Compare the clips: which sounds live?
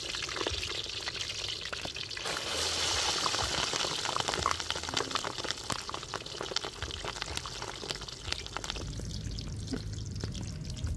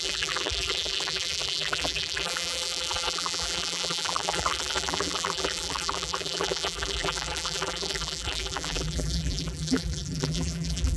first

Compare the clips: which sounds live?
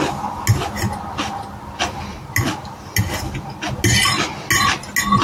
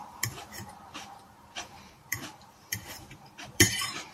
first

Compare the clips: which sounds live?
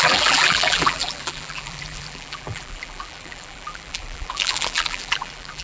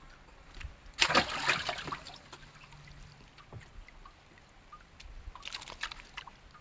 second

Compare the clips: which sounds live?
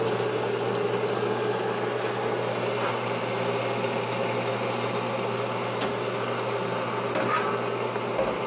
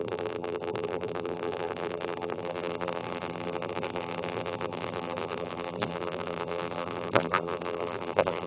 first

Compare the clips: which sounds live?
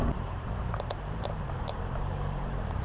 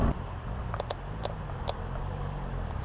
second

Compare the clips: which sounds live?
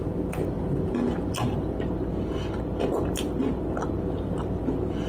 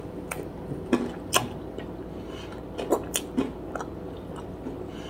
second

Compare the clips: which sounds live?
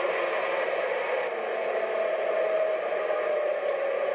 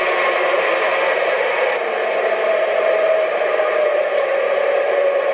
first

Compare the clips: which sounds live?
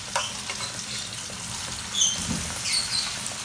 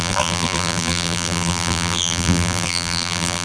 first